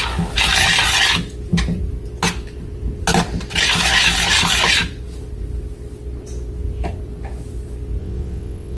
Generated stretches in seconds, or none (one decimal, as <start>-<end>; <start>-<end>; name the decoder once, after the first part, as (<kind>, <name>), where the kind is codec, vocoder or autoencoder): 8.0-8.8 (vocoder, WaveNeXt)